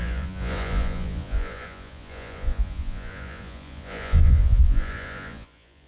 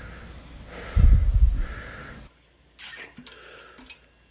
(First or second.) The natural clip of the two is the second